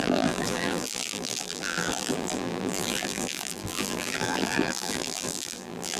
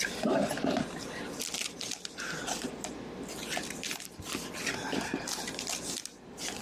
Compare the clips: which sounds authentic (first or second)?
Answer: second